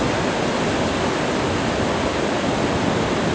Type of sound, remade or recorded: recorded